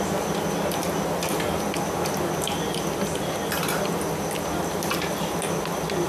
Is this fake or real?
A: real